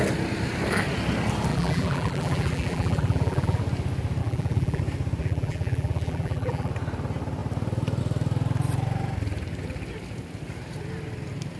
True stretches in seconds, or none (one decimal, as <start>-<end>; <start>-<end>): 0.0-1.5; 3.6-4.2; 4.8-5.2; 6.7-11.6